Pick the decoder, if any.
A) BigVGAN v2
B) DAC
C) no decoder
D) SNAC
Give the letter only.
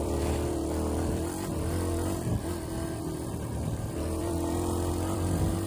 A